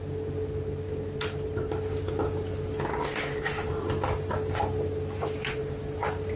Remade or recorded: recorded